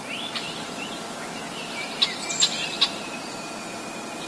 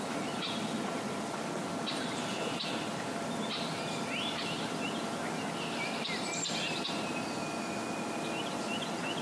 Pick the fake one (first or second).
first